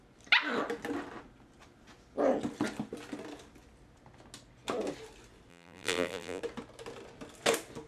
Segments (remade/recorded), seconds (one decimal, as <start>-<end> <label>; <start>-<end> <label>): 0.0-5.5 recorded; 5.5-6.4 remade; 6.4-7.9 recorded